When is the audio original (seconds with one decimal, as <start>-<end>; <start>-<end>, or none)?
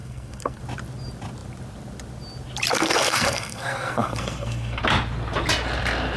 0.6-2.7; 4.8-6.2